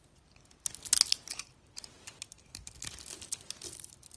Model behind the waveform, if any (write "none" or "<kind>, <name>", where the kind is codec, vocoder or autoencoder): none